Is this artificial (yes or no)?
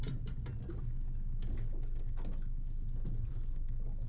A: no